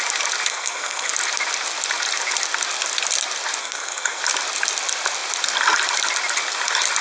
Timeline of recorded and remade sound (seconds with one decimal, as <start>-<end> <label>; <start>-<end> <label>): 0.0-0.5 recorded; 0.5-1.1 remade; 1.1-3.6 recorded; 3.6-4.2 remade; 4.2-7.0 recorded